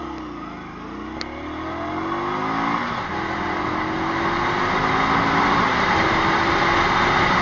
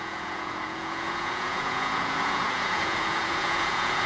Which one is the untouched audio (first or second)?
first